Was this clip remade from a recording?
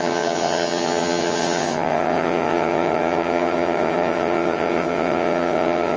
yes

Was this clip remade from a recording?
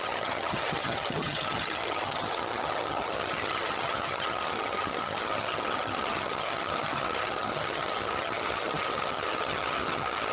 yes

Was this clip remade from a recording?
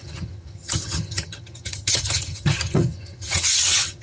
yes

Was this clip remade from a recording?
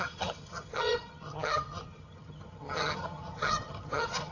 yes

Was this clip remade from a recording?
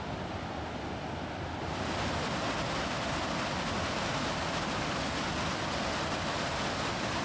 no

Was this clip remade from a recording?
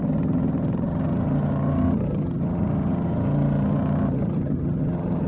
yes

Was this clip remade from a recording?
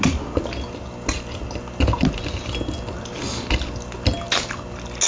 no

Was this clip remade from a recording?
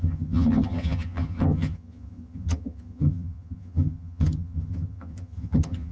yes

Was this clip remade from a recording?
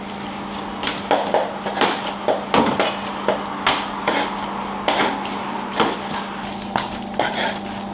no